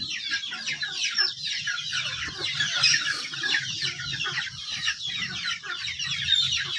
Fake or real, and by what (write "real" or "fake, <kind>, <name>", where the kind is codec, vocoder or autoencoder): real